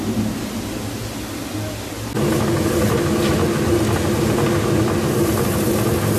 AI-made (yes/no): no